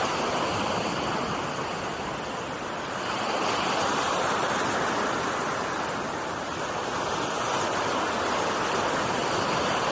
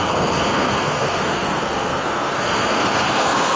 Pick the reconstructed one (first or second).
second